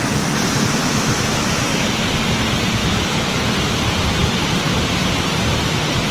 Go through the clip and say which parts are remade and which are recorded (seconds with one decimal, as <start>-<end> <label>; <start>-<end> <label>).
0.0-0.8 recorded; 0.8-1.9 remade; 1.9-2.8 recorded; 2.8-3.4 remade; 3.4-6.1 recorded